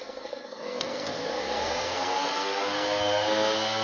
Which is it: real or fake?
fake